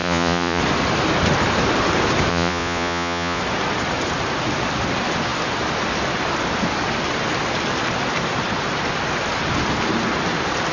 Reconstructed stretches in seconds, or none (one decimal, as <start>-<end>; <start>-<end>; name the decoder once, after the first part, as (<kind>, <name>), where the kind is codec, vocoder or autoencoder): 0.0-0.6 (vocoder, Vocos); 2.3-3.4